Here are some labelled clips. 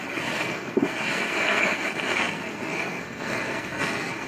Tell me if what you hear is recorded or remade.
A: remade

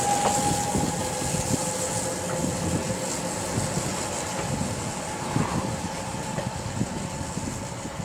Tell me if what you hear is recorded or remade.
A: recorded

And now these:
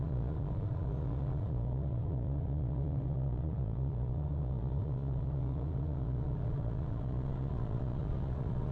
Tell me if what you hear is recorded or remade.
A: remade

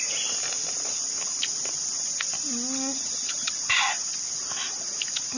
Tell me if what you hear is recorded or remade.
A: recorded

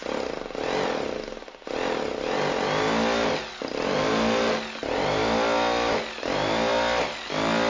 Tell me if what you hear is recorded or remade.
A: recorded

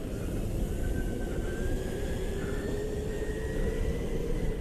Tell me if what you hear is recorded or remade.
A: remade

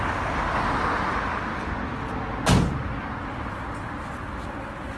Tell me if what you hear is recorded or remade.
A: recorded